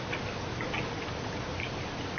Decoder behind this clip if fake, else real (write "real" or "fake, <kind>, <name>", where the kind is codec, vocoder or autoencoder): real